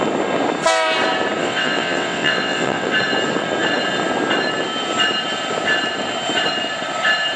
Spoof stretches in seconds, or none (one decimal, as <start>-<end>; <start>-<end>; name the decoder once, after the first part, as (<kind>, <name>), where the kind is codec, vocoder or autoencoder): 1.4-2.9 (vocoder, WaveNeXt)